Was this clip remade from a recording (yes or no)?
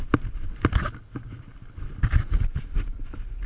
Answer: no